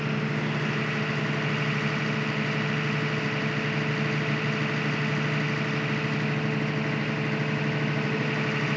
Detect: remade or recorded recorded